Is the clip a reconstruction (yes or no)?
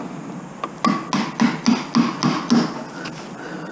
no